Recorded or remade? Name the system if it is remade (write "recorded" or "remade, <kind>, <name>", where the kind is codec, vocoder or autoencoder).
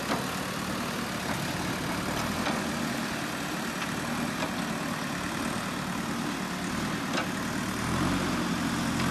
recorded